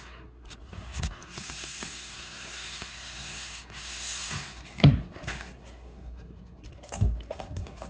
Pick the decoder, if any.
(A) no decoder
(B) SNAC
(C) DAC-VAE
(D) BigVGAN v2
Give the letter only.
B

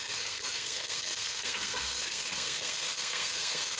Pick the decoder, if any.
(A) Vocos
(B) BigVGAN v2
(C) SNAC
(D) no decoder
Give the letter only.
C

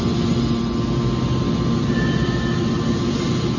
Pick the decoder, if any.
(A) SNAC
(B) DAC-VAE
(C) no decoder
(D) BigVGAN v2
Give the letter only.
C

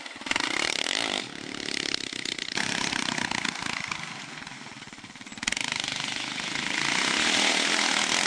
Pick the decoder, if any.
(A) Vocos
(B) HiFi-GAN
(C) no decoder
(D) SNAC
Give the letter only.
C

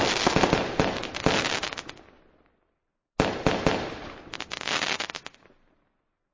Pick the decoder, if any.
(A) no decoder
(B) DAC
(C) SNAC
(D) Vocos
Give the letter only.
A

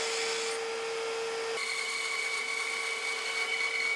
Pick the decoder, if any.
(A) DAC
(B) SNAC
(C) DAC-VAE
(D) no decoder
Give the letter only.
D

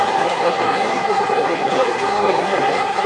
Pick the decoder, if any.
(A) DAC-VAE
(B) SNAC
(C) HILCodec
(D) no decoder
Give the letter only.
B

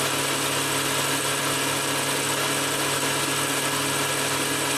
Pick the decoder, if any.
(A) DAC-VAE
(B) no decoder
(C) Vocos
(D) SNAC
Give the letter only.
B